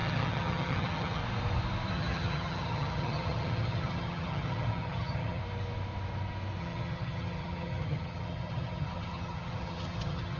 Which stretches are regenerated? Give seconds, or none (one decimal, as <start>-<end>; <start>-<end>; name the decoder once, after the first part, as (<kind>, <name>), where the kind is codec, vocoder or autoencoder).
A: 0.0-1.2 (vocoder, HiFi-GAN); 1.9-5.4; 6.6-10.4